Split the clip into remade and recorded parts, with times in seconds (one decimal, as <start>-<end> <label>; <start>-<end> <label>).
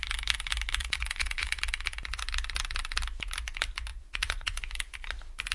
0.0-0.8 recorded; 0.8-1.6 remade; 1.6-3.9 recorded; 3.9-4.6 remade; 4.6-5.5 recorded